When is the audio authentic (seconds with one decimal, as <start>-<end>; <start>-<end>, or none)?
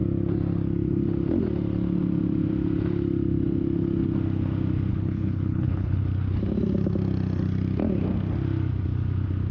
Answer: 0.0-4.9; 6.0-9.5